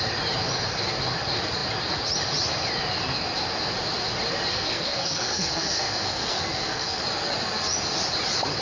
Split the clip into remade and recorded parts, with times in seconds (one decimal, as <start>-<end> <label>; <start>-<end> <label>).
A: 0.0-4.5 recorded; 4.5-7.0 remade; 7.0-8.6 recorded